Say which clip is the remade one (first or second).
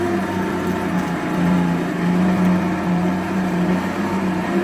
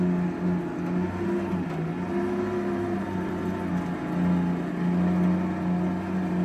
first